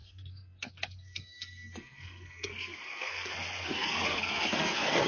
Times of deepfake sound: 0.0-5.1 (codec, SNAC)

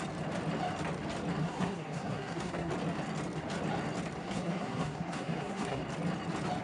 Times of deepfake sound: 1.4-2.7 (codec, SNAC); 4.2-5.8

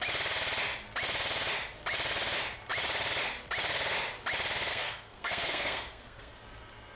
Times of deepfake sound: 4.7-6.3 (codec, SNAC)

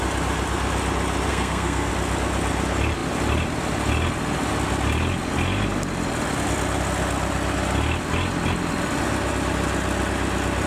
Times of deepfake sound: 1.3-1.9 (codec, SNAC)

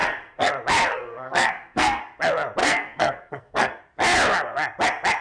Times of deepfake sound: 0.0-0.5 (codec, SNAC); 0.9-2.0; 2.6-3.8

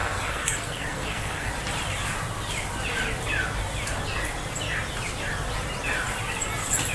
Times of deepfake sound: 0.0-1.5 (codec, SNAC)

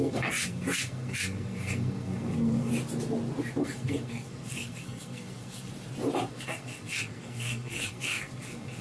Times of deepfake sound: 0.0-2.7 (codec, SNAC); 3.6-5.7; 6.3-8.8